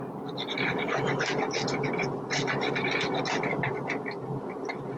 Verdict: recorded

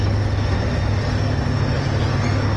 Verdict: recorded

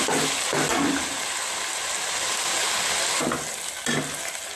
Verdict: recorded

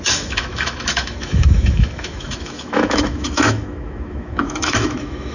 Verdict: remade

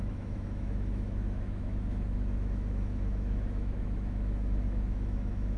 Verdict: remade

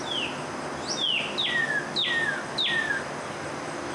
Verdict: recorded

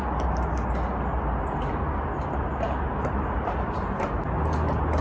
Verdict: recorded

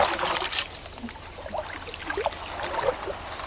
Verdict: recorded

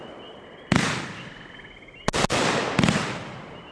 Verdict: recorded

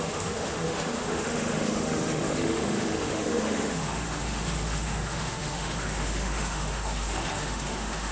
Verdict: remade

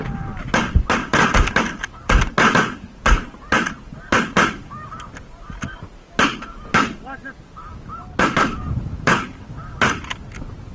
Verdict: recorded